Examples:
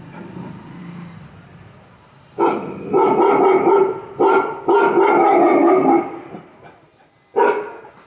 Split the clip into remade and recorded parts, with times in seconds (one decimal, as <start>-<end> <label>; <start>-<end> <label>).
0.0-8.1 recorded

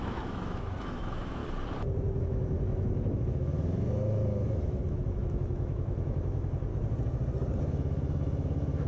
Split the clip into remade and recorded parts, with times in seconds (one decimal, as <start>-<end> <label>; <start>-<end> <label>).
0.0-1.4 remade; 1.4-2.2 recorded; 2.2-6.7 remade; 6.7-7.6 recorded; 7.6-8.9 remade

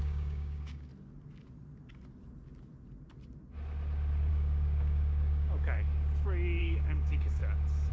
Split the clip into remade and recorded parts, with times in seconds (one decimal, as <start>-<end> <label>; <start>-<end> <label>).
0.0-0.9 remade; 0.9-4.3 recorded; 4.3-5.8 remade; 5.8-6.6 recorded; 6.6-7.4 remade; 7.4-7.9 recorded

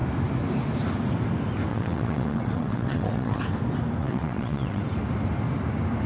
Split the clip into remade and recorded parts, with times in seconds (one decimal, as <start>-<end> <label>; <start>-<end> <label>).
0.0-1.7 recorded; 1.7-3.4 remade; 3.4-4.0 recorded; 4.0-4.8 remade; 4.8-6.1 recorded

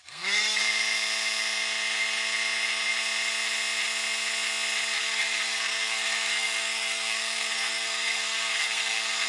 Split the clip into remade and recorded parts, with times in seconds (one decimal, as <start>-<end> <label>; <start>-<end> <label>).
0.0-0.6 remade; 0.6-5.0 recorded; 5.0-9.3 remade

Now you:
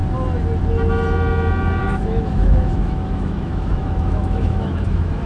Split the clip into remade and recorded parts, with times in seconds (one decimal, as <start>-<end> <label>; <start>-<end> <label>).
0.0-1.8 recorded; 1.8-5.3 remade